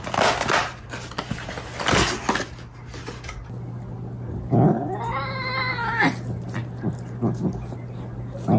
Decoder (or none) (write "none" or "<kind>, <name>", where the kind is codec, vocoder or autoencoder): none